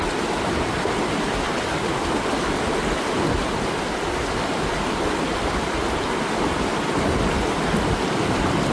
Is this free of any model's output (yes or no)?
yes